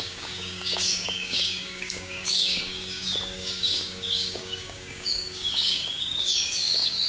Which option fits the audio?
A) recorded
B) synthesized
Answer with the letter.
B